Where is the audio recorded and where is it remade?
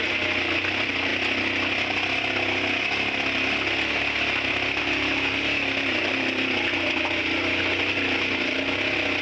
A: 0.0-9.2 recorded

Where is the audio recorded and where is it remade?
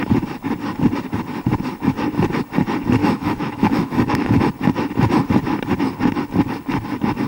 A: 0.0-3.0 recorded; 3.0-4.4 remade; 4.4-7.3 recorded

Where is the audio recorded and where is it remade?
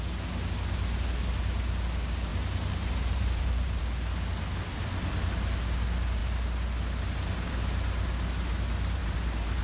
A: 0.0-2.3 recorded; 2.3-3.8 remade; 3.8-9.0 recorded; 9.0-9.6 remade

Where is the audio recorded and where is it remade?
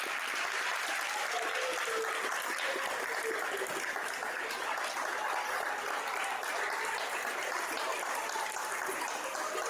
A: 0.0-9.7 recorded